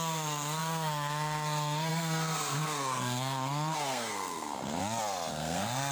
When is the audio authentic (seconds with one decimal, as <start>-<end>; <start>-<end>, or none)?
4.8-5.3

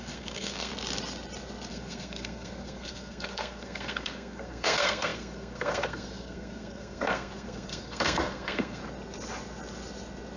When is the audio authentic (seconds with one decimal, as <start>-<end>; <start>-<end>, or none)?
0.7-1.7; 8.8-10.4

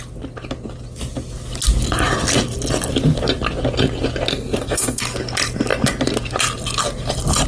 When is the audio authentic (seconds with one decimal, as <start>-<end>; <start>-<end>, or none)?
0.0-4.3; 5.0-7.5

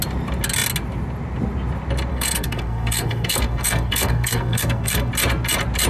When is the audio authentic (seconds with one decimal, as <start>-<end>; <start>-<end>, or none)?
0.0-2.1; 5.1-5.9

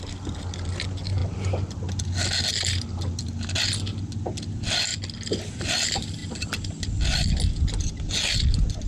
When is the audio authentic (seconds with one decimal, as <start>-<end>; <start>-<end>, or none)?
0.0-8.9